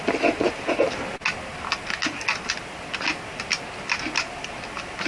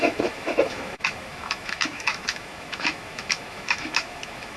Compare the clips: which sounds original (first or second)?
first